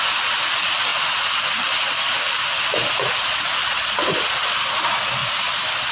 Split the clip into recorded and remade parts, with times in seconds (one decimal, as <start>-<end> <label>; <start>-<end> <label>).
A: 0.0-0.9 recorded; 0.9-4.2 remade; 4.2-5.2 recorded; 5.2-5.9 remade